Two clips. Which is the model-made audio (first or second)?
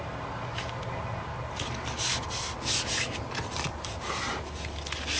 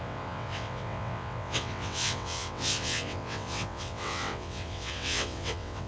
second